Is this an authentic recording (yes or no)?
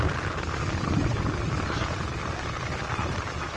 yes